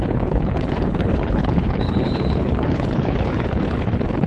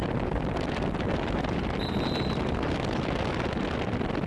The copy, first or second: first